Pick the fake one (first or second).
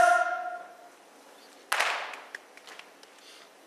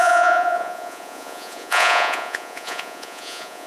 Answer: second